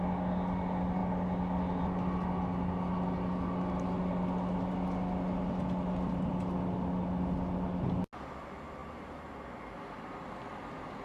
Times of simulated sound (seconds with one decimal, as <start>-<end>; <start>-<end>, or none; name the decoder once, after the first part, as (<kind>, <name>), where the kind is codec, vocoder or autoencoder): none